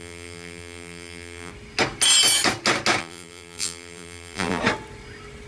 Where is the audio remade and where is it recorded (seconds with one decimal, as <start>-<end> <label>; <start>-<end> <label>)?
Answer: 0.0-1.5 remade; 1.5-3.0 recorded; 3.0-4.6 remade; 4.6-5.5 recorded